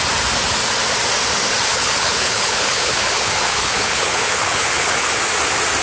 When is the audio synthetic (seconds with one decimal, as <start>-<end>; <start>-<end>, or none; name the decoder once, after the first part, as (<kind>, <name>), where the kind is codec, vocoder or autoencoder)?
1.7-5.2 (codec, HILCodec)